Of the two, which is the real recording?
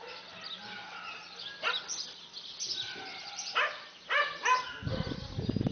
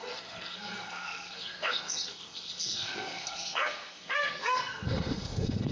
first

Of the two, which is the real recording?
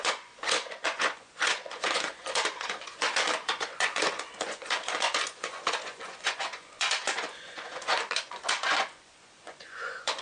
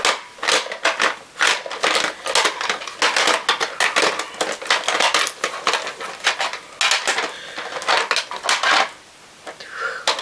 second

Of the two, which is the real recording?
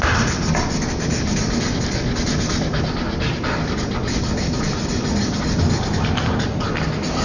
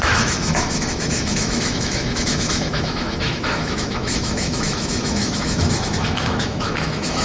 first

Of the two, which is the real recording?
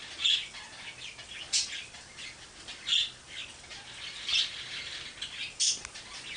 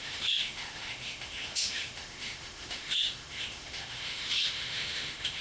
first